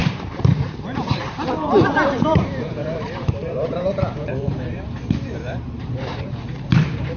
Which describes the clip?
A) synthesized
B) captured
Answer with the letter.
A